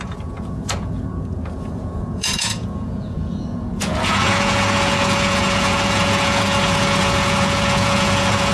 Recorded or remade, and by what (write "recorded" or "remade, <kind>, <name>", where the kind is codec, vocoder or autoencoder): remade, vocoder, Vocos